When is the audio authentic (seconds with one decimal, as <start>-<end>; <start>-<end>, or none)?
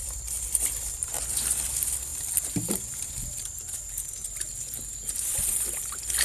0.7-6.2